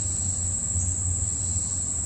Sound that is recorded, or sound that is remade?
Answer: remade